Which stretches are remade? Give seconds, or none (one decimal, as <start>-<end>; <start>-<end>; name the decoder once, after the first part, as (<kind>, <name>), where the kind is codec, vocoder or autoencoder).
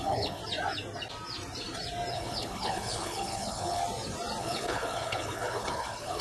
0.0-0.4 (codec, HILCodec); 2.1-3.8; 4.4-6.2